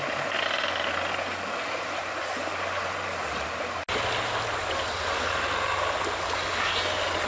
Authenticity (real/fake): real